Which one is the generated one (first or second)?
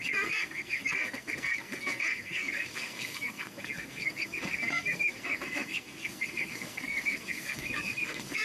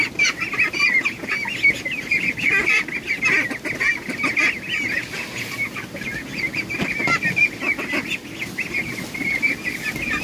first